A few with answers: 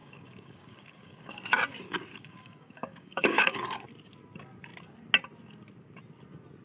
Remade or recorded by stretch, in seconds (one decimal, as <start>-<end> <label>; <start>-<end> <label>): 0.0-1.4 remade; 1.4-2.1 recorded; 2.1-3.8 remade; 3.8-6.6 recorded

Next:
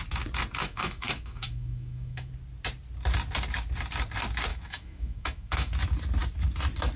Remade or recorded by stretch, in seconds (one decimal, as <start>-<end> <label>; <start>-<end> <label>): 0.0-0.6 recorded; 0.6-2.3 remade; 2.3-4.5 recorded; 4.5-5.7 remade; 5.7-7.0 recorded

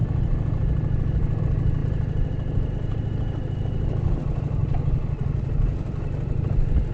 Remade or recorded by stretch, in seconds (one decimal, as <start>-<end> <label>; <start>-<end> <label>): 0.0-4.6 recorded; 4.6-6.4 remade; 6.4-6.9 recorded

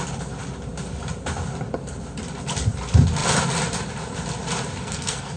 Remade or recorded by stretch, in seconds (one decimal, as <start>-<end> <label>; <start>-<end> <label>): 0.0-4.8 recorded; 4.8-5.4 remade

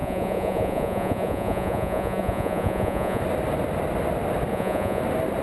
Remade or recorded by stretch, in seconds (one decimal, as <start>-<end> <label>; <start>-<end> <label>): 0.0-3.2 remade; 3.2-4.5 recorded; 4.5-5.0 remade; 5.0-5.4 recorded

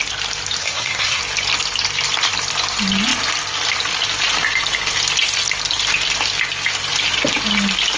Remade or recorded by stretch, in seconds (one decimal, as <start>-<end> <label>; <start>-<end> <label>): 0.0-0.6 recorded; 0.6-1.2 remade; 1.2-8.0 recorded

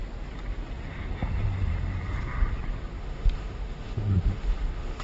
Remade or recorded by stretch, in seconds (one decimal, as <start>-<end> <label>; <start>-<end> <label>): 0.0-3.0 recorded; 3.0-5.0 remade